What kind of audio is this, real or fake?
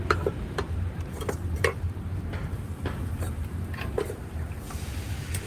fake